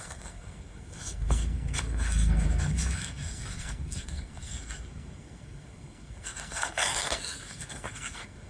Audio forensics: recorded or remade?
remade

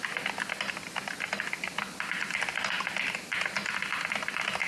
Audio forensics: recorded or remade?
recorded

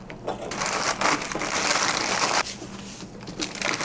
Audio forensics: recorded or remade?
recorded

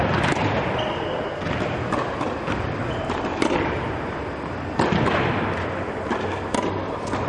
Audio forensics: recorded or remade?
recorded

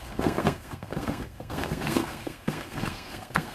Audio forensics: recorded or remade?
remade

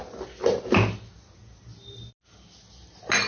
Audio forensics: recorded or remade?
recorded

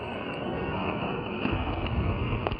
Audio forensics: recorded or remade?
remade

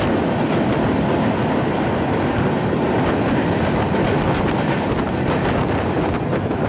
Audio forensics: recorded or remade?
recorded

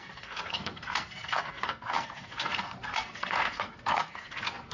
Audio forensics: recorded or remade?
remade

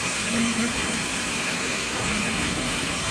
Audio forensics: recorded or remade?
remade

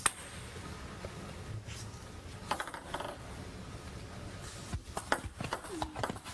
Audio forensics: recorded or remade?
recorded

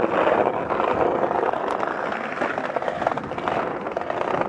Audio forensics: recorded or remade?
recorded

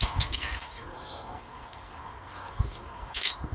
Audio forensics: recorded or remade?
remade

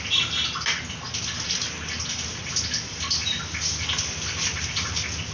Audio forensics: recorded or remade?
recorded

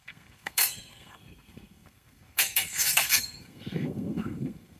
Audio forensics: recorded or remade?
remade